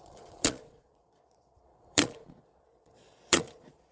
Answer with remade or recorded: remade